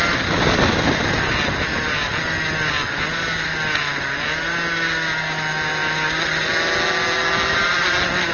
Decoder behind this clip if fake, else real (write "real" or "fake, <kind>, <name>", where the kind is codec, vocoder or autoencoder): real